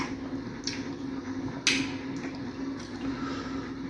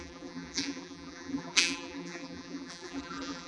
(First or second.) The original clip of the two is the first